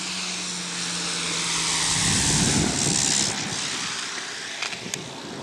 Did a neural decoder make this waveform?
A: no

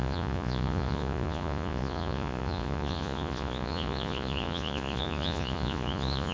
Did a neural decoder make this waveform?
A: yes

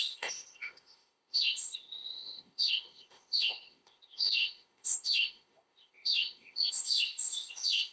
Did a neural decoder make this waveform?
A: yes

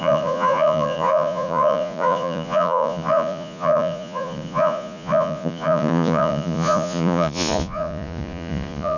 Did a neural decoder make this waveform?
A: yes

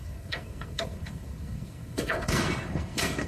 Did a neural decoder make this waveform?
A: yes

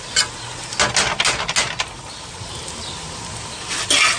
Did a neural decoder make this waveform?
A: no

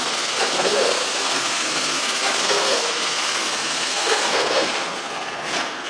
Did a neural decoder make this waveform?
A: yes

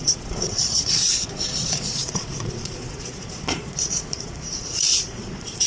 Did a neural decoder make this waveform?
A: yes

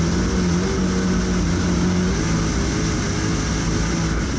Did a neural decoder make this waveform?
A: no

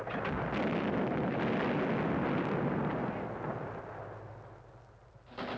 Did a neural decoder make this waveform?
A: no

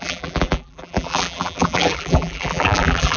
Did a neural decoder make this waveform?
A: yes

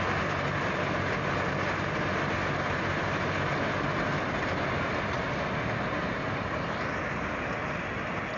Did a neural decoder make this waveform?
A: no